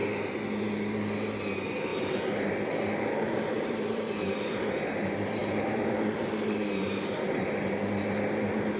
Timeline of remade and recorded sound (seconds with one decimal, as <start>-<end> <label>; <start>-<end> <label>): 0.0-1.9 recorded; 1.9-4.8 remade; 4.8-5.4 recorded; 5.4-6.7 remade; 6.7-8.8 recorded